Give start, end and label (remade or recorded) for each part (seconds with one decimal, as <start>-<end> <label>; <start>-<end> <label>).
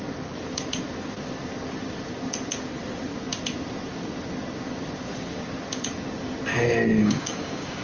0.0-7.0 recorded; 7.0-7.8 remade